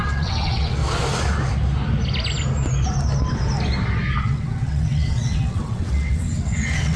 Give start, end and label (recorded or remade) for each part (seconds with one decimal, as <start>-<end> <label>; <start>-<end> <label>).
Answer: 0.0-0.8 remade; 0.8-4.2 recorded; 4.2-7.0 remade